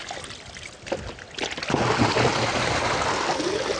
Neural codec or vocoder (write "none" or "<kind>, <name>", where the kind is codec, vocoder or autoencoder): none